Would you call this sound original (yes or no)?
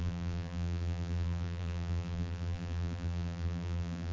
no